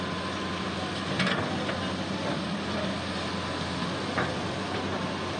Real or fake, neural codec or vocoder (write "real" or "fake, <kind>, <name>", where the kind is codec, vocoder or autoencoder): real